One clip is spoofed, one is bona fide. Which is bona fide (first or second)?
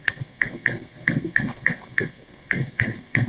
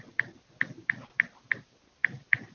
second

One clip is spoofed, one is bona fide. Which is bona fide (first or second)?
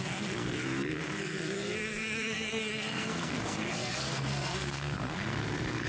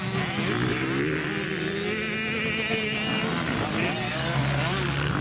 second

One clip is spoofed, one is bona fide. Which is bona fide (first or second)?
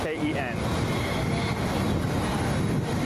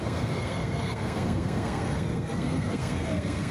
first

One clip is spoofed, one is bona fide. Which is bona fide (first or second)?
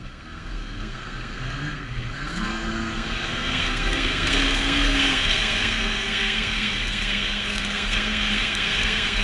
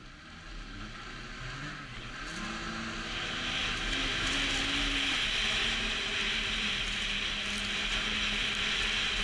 second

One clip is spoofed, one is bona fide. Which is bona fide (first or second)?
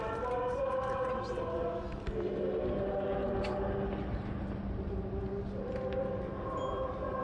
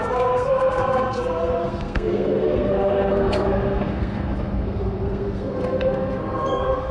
first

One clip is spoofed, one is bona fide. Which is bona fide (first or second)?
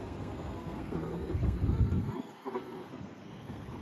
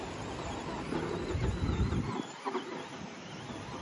second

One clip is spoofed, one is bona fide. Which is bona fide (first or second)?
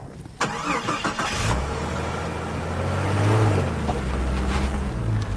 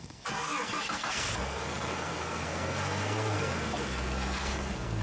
first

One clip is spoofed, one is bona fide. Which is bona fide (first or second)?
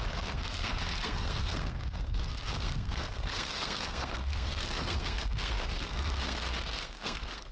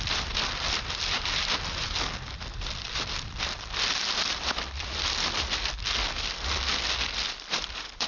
second